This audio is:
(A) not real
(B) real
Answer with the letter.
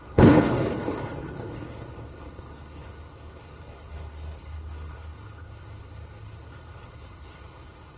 A